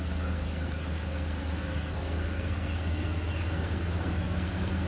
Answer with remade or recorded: remade